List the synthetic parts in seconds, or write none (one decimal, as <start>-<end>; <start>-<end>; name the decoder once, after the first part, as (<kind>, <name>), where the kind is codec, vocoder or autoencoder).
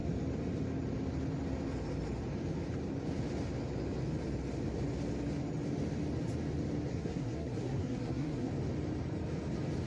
6.9-8.5 (codec, SNAC)